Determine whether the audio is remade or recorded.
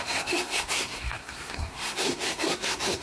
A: remade